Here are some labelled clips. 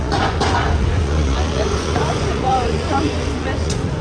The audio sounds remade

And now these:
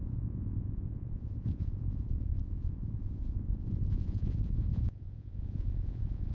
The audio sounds remade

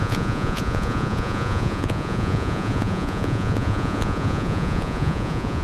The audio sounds remade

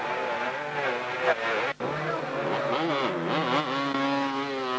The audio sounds recorded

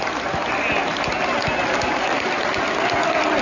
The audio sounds recorded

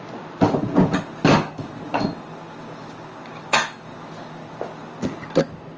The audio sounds recorded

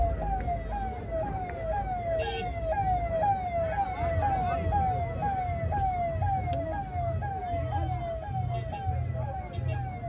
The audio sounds recorded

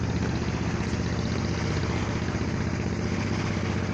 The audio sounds recorded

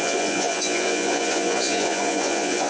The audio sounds remade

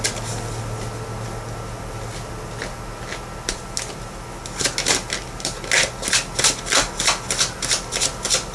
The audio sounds recorded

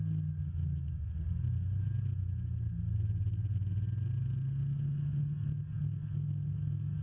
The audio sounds recorded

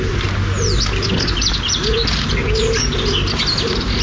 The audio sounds recorded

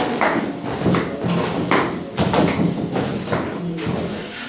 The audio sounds recorded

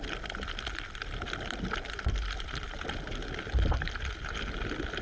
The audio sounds recorded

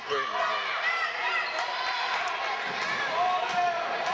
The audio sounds recorded